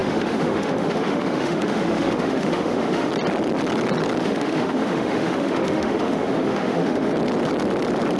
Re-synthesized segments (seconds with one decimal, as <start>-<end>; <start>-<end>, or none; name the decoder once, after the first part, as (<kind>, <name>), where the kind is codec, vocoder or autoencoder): 0.0-3.1 (autoencoder, DAC-VAE); 4.2-7.1